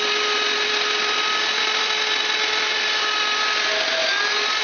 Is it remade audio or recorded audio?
recorded